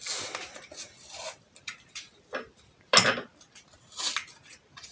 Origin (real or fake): real